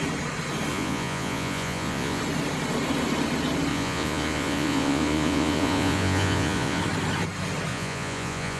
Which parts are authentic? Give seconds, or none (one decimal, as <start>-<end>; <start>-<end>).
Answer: 0.0-0.7; 2.2-3.7; 6.8-7.7